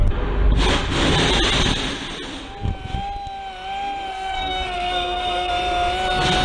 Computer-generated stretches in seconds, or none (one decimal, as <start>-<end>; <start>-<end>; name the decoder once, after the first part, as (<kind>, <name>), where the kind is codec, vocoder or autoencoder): 4.1-5.5 (codec, SNAC)